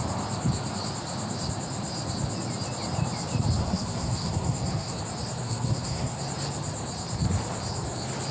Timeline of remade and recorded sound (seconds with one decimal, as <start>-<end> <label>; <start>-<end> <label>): 0.0-3.6 recorded; 3.6-5.0 remade; 5.0-5.4 recorded; 5.4-6.2 remade; 6.2-8.3 recorded

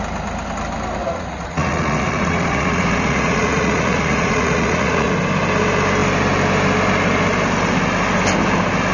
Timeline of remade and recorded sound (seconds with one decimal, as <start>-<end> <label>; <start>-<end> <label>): 0.0-1.0 recorded; 1.0-5.1 remade; 5.1-8.9 recorded

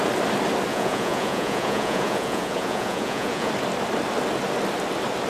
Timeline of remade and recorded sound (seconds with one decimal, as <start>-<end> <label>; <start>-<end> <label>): 0.0-0.7 recorded; 0.7-3.5 remade; 3.5-5.3 recorded

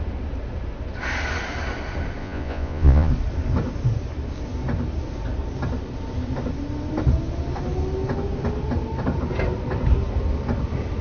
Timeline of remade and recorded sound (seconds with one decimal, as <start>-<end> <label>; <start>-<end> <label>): 0.0-2.2 recorded; 2.2-3.1 remade; 3.1-11.0 recorded

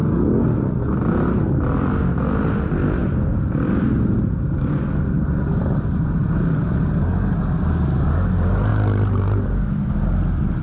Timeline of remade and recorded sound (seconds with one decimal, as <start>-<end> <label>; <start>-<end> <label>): 0.0-10.6 recorded

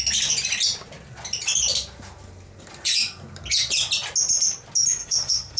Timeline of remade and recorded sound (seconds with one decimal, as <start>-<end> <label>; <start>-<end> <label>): 0.0-5.0 recorded; 5.0-5.6 remade

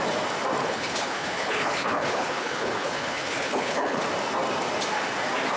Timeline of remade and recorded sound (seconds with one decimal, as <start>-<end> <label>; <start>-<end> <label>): 0.0-0.6 recorded; 0.6-4.0 remade; 4.0-5.6 recorded